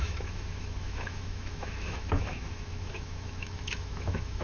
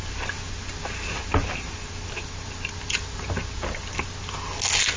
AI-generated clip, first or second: first